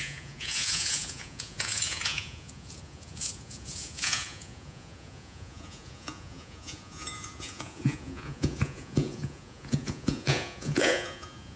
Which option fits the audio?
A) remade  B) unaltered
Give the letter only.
A